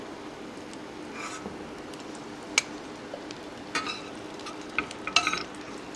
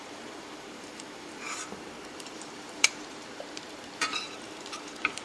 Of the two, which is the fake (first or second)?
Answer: second